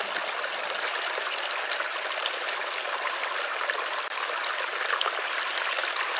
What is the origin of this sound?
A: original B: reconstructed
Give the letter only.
A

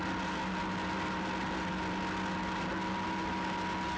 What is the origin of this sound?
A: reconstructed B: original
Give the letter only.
B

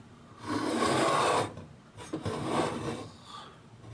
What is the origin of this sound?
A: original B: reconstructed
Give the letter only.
A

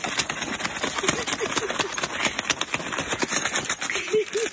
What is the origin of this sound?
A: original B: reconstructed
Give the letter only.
A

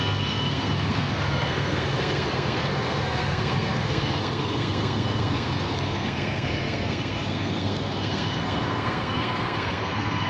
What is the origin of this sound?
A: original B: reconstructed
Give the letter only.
B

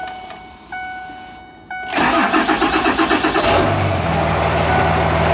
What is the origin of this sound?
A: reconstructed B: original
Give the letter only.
B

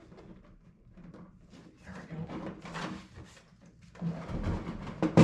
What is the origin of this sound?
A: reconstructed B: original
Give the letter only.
B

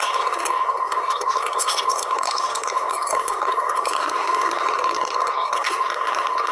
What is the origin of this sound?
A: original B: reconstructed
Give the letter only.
B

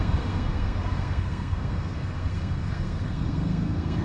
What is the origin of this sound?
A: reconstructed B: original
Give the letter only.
A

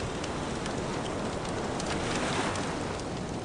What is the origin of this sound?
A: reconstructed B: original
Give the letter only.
B